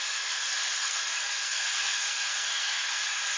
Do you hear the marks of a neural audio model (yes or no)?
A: yes